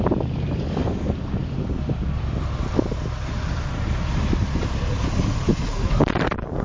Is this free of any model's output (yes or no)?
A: no